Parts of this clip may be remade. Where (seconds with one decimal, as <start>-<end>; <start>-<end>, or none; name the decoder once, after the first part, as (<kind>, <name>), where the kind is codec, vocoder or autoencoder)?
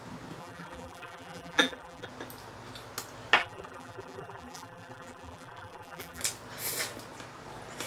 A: 0.4-2.1 (vocoder, BigVGAN v2); 3.4-6.2